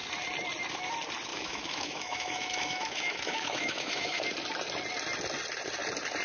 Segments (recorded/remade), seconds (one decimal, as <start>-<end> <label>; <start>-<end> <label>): 0.0-1.3 recorded; 1.3-4.2 remade; 4.2-6.2 recorded